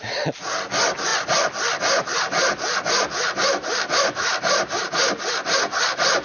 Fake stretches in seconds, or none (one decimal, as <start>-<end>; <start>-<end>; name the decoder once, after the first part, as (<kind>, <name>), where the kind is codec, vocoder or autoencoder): none